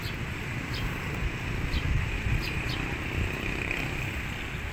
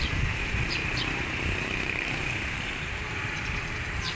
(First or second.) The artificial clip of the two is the second